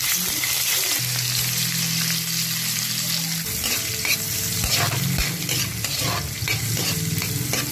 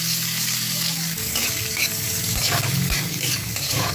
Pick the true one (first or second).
first